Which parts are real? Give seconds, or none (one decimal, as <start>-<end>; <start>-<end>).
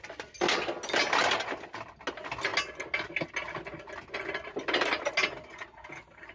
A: 0.0-6.3